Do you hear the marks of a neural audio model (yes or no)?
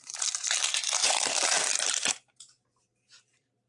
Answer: yes